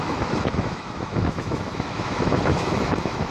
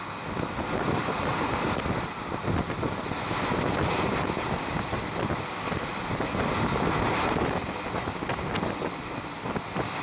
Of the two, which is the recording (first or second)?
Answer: second